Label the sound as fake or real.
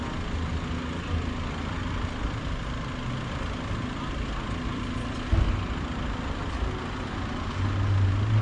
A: real